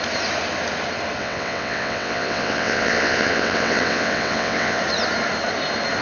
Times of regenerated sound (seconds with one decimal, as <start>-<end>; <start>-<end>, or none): 1.2-4.8